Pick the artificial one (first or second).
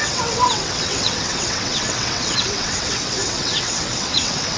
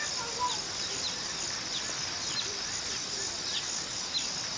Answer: first